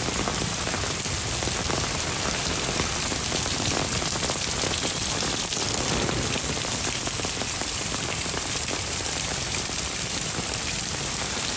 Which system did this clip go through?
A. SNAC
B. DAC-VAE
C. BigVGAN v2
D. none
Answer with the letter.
C